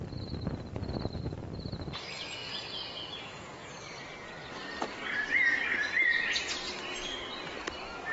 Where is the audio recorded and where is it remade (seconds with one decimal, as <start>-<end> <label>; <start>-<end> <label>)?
0.0-2.4 recorded; 2.4-3.7 remade; 3.7-8.1 recorded